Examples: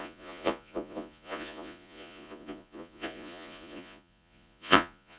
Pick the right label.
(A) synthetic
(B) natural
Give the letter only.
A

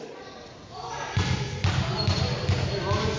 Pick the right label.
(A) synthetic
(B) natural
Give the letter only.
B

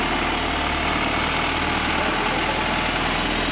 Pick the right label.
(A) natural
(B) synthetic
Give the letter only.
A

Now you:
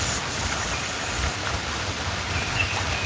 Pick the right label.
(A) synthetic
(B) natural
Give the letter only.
B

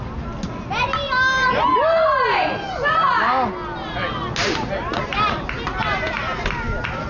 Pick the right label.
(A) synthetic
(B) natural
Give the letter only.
B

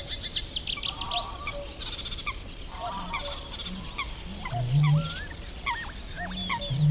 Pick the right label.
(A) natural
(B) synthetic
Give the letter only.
A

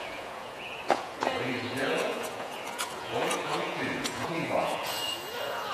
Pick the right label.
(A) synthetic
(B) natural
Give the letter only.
A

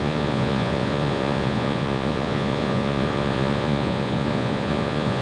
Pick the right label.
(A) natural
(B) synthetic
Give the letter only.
B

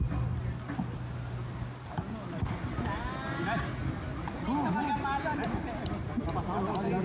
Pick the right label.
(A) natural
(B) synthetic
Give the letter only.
A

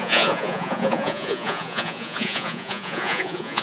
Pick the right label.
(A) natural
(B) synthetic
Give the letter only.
B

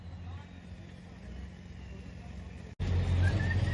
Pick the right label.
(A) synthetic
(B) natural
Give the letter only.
B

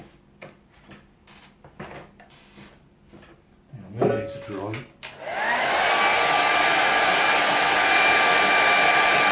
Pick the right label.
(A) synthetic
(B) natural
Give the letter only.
B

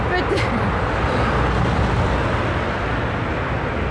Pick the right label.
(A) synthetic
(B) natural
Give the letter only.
B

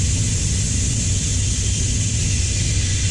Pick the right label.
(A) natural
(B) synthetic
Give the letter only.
A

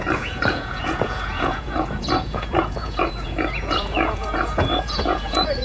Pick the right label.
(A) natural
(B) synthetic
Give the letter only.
B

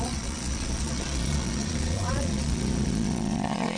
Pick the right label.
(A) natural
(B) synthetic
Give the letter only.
B